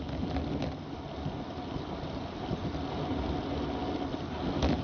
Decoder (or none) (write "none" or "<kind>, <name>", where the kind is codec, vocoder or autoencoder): none